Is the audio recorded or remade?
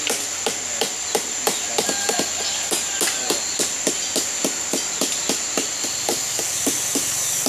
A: recorded